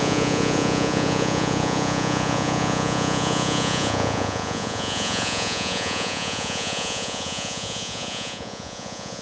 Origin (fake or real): fake